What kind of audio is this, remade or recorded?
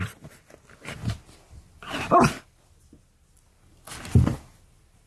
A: recorded